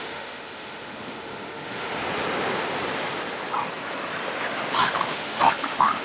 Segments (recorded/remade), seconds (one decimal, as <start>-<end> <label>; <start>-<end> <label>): 0.0-2.0 remade; 2.0-4.8 recorded; 4.8-6.0 remade